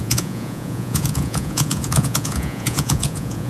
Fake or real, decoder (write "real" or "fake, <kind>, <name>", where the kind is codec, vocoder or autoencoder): fake, vocoder, Vocos